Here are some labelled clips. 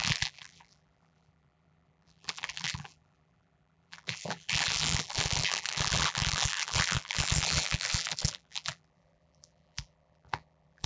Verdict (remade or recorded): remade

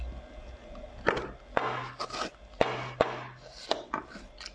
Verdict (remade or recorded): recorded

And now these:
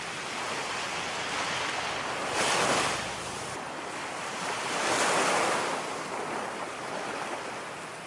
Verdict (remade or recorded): recorded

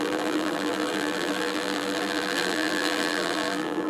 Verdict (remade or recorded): remade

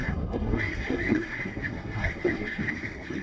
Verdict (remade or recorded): remade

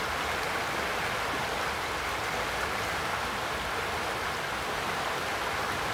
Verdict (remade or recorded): recorded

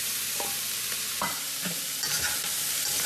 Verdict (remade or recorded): remade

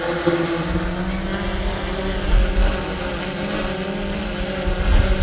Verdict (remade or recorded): recorded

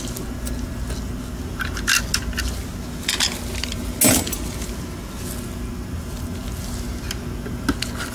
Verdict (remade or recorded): recorded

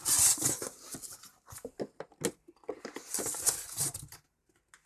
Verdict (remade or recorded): recorded